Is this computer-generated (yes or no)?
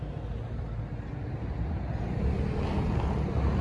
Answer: no